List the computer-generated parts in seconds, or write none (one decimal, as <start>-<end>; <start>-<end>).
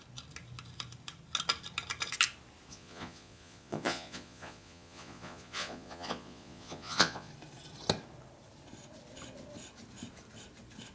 2.7-7.3